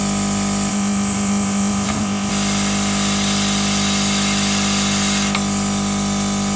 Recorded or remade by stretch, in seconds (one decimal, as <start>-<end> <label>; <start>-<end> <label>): 0.0-0.7 recorded; 0.7-2.3 remade; 2.3-6.6 recorded